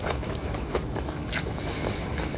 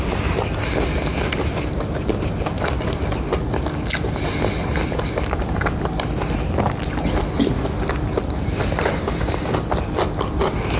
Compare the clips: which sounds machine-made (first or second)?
first